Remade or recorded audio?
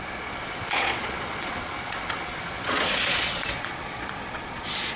remade